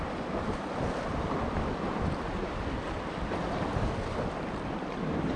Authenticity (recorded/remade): recorded